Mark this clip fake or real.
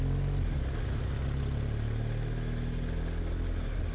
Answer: real